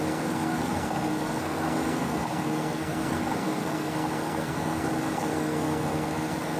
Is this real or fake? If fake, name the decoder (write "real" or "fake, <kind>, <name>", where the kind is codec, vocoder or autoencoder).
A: fake, codec, SNAC